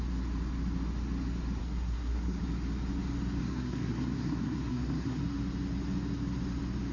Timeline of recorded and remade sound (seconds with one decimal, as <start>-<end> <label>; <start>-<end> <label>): 0.0-1.6 recorded; 1.6-2.4 remade; 2.4-3.4 recorded; 3.4-5.2 remade; 5.2-6.9 recorded

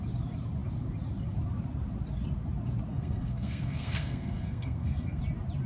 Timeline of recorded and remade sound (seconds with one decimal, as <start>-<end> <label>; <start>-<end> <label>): 0.0-2.9 recorded; 2.9-5.2 remade; 5.2-5.7 recorded

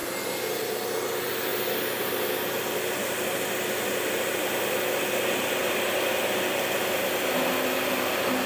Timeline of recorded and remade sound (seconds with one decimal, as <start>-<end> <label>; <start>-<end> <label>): 0.0-8.5 recorded

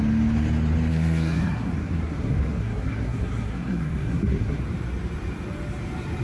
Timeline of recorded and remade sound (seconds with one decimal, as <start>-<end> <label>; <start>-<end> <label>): 0.0-0.9 recorded; 0.9-4.6 remade; 4.6-6.2 recorded

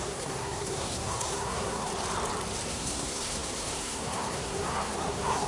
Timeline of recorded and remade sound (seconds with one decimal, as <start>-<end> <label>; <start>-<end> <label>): 0.0-1.9 remade; 1.9-2.7 recorded; 2.7-5.5 remade